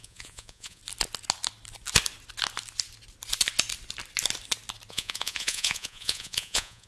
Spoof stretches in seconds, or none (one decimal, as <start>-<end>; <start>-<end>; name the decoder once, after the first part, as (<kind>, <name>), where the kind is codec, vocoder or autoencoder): 0.0-0.8 (vocoder, Vocos); 4.9-6.9

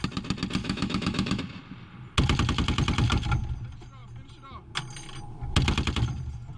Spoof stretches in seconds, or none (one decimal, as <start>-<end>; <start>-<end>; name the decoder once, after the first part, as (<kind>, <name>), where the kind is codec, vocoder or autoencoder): 0.6-1.4 (autoencoder, DAC-VAE)

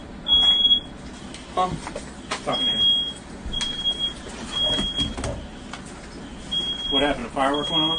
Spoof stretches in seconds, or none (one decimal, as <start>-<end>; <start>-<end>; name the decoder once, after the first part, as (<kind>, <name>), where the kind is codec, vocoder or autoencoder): none